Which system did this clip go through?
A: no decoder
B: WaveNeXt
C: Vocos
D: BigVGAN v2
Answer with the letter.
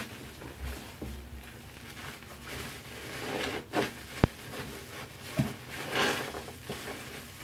A